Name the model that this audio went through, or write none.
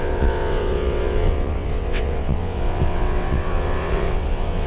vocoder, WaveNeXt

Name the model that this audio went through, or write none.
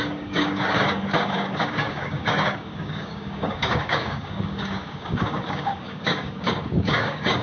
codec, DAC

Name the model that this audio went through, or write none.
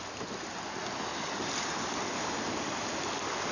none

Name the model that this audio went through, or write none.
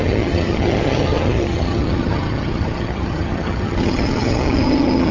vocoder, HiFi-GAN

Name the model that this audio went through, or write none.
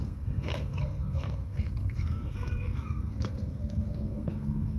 codec, SNAC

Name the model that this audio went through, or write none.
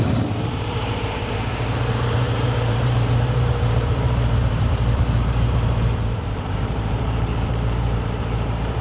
vocoder, BigVGAN v2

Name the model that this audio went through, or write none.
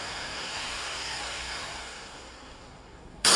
codec, SNAC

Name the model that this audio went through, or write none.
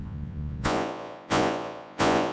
vocoder, Vocos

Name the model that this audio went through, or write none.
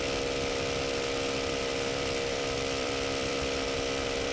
vocoder, BigVGAN v2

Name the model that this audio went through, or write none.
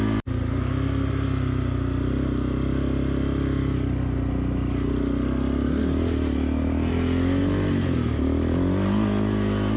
none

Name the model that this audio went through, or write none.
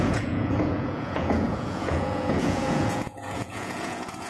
vocoder, Vocos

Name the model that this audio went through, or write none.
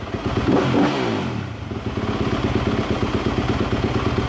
none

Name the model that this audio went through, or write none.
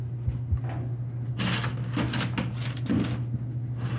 none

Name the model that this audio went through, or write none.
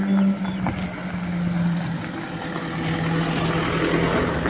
none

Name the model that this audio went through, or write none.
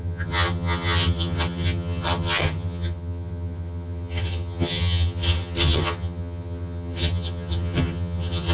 vocoder, HiFi-GAN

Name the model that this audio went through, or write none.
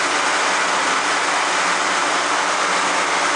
none